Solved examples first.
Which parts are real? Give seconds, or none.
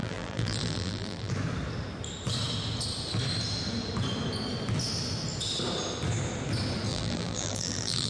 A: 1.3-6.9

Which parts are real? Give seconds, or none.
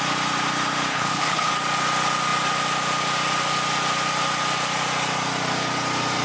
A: 0.0-0.9; 1.5-6.2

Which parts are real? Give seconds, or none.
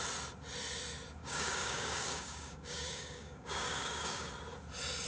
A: 0.0-1.2; 4.3-5.1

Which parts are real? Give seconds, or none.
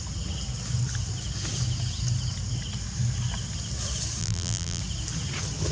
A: 0.0-4.2; 4.8-5.7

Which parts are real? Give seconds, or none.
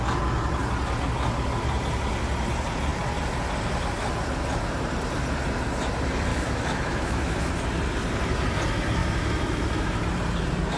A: 0.0-6.3; 7.5-9.0; 10.0-10.8